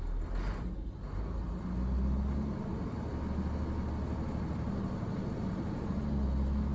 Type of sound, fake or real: real